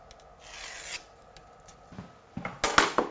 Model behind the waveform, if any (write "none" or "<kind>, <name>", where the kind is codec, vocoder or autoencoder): none